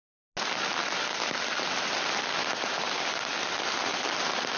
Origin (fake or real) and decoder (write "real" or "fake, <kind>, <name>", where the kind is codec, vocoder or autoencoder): real